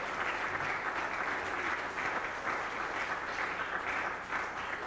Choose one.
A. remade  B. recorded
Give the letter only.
B